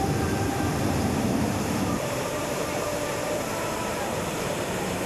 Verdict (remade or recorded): remade